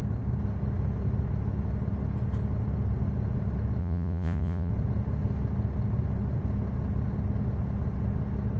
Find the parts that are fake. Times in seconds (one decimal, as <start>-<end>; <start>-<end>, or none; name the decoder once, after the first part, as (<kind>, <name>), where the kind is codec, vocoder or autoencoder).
3.8-4.7 (vocoder, Vocos)